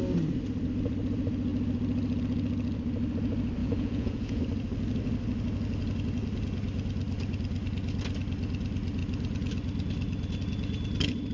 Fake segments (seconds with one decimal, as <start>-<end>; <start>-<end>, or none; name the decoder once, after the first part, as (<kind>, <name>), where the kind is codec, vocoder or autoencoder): 3.6-4.4 (vocoder, Vocos)